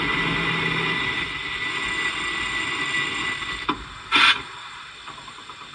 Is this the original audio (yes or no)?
yes